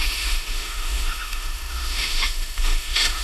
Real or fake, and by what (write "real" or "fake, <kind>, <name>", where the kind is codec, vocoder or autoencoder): fake, autoencoder, DAC-VAE